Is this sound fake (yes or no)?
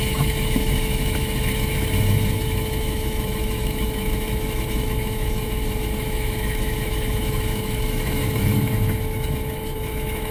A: yes